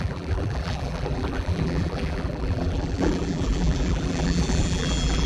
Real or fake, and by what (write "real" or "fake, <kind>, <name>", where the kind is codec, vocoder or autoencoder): fake, vocoder, BigVGAN v2